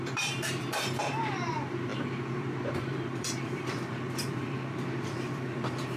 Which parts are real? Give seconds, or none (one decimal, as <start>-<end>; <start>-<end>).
none